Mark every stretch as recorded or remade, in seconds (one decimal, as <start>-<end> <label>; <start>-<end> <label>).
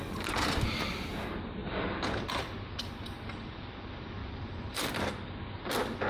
0.0-4.2 recorded; 4.2-4.9 remade; 4.9-6.1 recorded